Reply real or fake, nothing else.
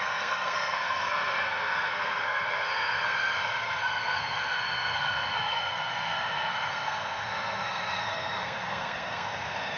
fake